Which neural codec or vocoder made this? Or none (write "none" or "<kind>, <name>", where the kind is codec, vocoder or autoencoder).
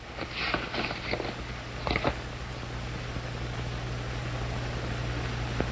none